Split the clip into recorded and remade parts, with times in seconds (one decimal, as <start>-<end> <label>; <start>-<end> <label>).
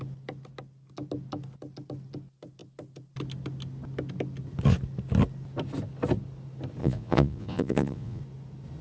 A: 0.0-6.8 recorded; 6.8-8.2 remade; 8.2-8.8 recorded